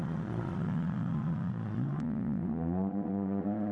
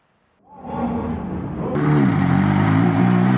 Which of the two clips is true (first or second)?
second